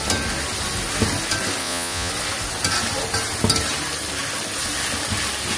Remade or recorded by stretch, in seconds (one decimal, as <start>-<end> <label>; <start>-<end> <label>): 0.0-1.6 recorded; 1.6-2.1 remade; 2.1-5.6 recorded